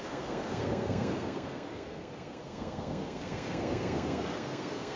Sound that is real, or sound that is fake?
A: fake